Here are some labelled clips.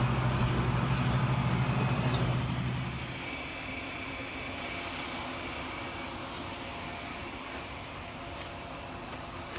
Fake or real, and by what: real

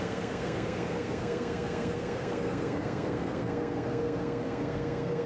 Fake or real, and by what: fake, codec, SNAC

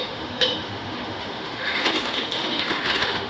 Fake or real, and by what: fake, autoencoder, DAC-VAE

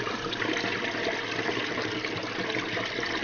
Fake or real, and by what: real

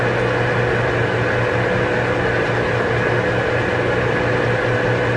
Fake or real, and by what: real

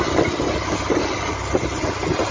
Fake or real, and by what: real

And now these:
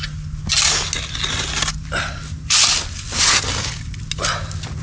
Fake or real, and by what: real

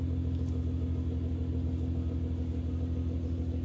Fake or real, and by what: real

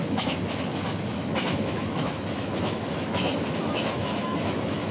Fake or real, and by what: fake, autoencoder, DAC-VAE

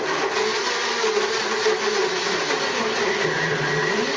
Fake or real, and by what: real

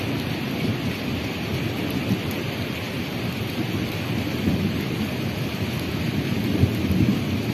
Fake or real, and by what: real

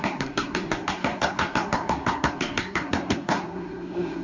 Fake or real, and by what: fake, codec, SNAC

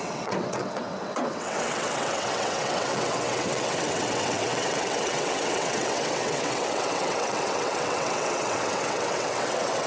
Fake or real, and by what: fake, vocoder, WaveNeXt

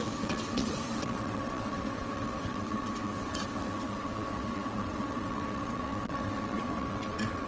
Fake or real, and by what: fake, vocoder, WaveNeXt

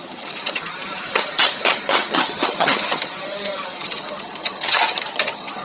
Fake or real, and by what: fake, vocoder, HiFi-GAN